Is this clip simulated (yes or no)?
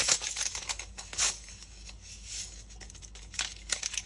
yes